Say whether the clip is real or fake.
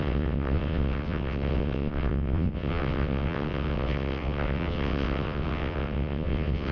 fake